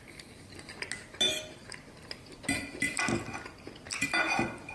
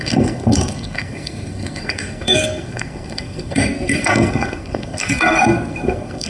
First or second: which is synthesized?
second